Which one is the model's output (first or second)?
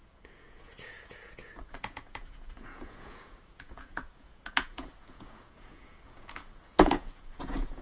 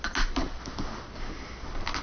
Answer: first